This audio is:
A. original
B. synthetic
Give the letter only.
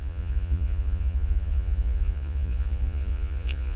B